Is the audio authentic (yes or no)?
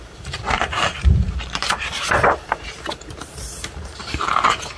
no